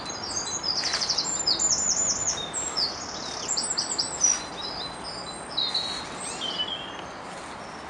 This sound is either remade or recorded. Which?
recorded